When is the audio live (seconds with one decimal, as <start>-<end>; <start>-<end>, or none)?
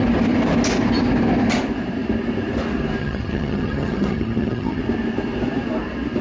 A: 0.0-3.0; 4.8-6.2